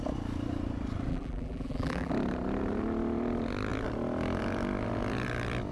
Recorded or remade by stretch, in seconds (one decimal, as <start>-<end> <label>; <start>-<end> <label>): 0.0-1.1 recorded; 1.1-2.1 remade; 2.1-5.7 recorded